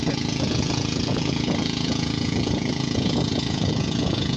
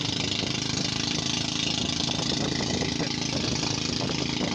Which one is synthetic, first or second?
first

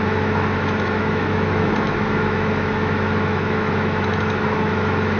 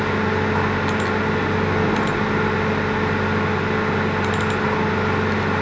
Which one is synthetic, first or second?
first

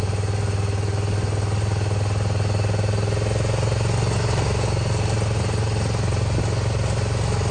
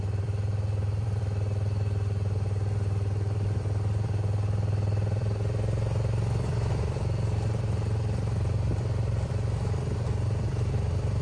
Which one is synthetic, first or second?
second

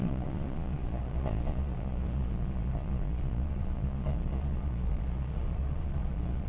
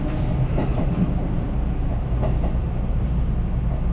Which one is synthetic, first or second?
first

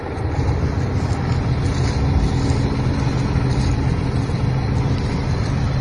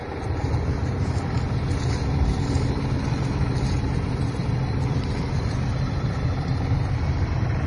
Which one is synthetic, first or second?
second